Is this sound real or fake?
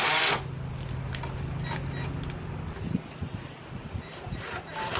real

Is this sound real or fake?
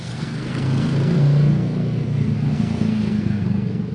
fake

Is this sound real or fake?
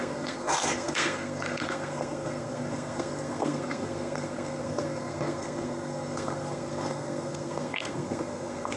fake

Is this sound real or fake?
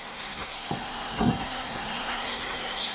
fake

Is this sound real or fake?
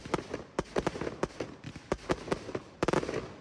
real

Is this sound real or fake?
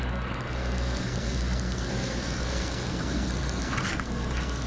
fake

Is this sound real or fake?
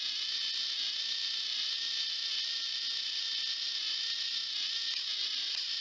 real